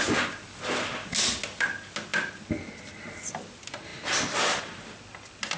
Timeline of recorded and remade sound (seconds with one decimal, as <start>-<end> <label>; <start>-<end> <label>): 0.0-5.6 recorded